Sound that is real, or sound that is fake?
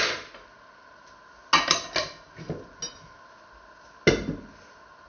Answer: real